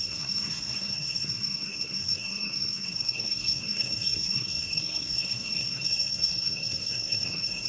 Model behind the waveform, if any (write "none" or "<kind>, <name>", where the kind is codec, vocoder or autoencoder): codec, SNAC